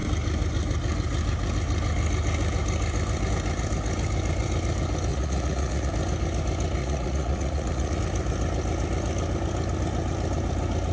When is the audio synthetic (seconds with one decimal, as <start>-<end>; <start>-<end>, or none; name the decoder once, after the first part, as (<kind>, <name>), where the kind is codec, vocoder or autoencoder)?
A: 5.1-5.9 (vocoder, Vocos); 6.8-8.0